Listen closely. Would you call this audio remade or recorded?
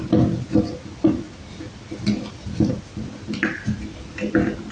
recorded